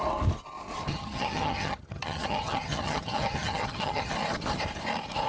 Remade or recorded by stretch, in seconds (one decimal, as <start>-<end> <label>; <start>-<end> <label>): 0.0-0.9 recorded; 0.9-4.1 remade; 4.1-5.3 recorded